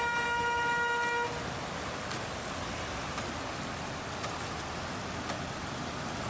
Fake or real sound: real